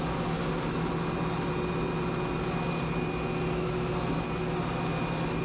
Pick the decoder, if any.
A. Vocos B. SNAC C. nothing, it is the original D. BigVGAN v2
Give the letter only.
C